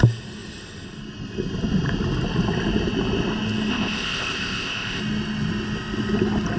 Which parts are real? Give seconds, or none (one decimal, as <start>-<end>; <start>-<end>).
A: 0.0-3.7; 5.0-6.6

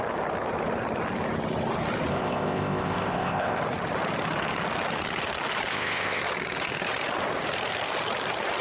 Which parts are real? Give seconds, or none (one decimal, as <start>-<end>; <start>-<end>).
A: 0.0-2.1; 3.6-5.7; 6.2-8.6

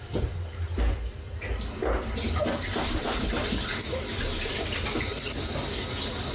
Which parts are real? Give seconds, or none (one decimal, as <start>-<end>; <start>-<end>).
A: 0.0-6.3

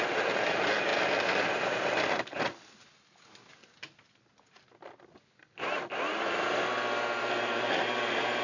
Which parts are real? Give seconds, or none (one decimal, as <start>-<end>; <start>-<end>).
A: 0.0-8.4